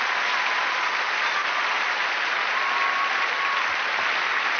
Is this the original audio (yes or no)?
yes